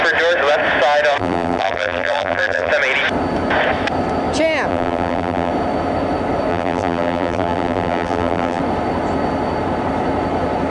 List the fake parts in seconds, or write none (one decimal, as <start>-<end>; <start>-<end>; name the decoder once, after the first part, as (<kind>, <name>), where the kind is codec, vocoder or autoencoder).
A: 1.2-2.7 (vocoder, BigVGAN v2); 4.7-5.5; 6.5-8.6